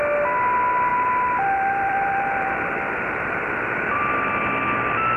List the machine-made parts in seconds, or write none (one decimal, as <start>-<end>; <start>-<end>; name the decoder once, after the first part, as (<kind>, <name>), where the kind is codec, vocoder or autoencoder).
0.9-4.0 (vocoder, BigVGAN v2)